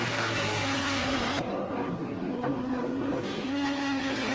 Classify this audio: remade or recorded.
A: remade